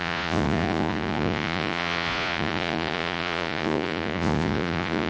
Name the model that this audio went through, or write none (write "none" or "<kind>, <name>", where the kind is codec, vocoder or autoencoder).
vocoder, Vocos